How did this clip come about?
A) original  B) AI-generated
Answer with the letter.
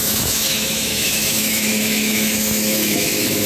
B